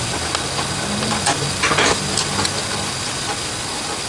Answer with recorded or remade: recorded